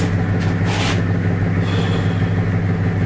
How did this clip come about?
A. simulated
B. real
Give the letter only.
B